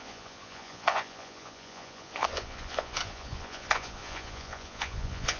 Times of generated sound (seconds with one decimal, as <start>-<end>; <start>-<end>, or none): 0.0-5.4